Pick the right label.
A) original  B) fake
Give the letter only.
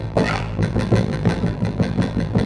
B